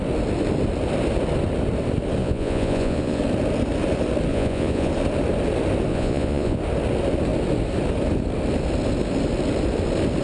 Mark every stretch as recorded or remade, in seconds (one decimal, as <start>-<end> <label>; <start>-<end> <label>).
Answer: 0.0-2.2 recorded; 2.2-3.2 remade; 3.2-4.3 recorded; 4.3-4.9 remade; 4.9-5.9 recorded; 5.9-6.6 remade; 6.6-10.2 recorded